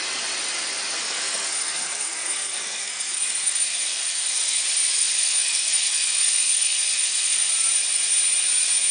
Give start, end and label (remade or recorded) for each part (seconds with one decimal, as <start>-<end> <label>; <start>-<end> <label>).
0.0-1.0 recorded; 1.0-4.6 remade; 4.6-5.0 recorded; 5.0-7.5 remade; 7.5-8.9 recorded